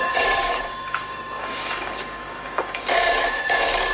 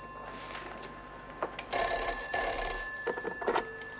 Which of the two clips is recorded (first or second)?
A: second